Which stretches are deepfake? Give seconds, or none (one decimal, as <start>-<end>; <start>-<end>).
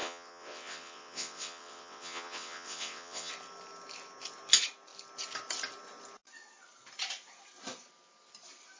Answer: 0.0-3.3